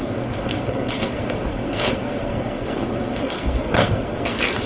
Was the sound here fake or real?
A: fake